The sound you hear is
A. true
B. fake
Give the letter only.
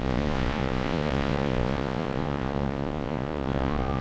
B